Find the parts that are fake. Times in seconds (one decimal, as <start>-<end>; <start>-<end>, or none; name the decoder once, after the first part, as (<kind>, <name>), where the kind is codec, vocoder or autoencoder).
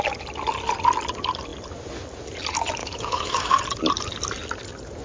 2.8-3.6 (autoencoder, DAC-VAE)